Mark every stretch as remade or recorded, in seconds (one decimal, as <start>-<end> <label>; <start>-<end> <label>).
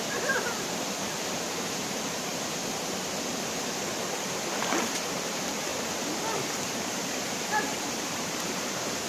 0.0-2.3 remade; 2.3-4.2 recorded; 4.2-5.7 remade; 5.7-7.1 recorded; 7.1-9.1 remade